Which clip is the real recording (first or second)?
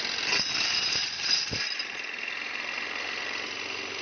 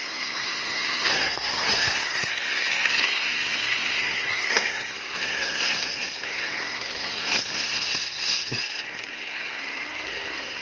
first